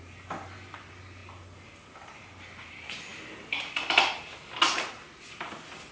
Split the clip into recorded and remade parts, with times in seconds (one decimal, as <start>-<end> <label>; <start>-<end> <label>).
0.0-5.9 recorded